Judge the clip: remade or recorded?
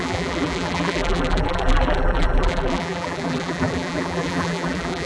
remade